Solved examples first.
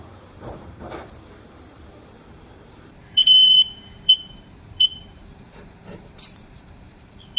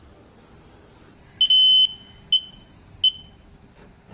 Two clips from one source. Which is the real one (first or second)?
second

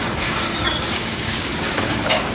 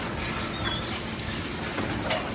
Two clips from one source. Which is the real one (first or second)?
second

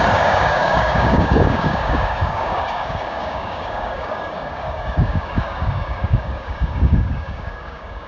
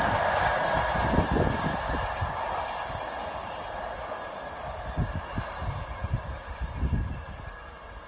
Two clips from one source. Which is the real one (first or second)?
second